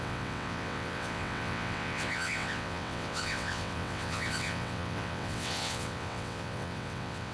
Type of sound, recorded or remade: remade